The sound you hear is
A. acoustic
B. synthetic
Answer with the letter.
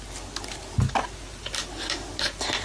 A